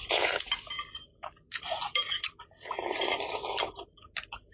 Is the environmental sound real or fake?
real